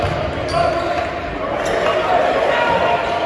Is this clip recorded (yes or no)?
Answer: yes